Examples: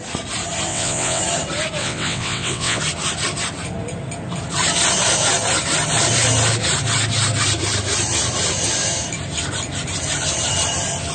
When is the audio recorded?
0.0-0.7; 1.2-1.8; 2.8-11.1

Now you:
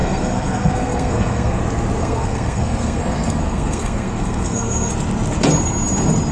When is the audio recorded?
1.6-2.0; 4.9-6.3